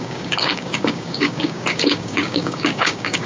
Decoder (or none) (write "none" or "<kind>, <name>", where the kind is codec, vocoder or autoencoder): codec, DAC